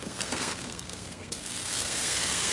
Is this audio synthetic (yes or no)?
yes